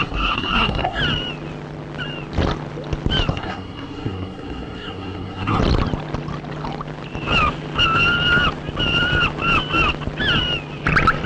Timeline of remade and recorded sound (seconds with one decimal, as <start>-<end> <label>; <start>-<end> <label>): 0.0-1.0 remade; 1.0-3.3 recorded; 3.3-5.6 remade; 5.6-11.3 recorded